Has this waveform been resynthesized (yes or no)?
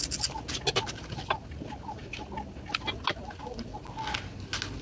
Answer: no